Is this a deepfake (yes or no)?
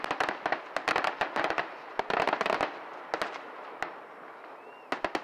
no